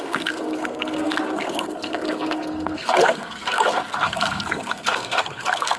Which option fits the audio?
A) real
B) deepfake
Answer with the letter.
B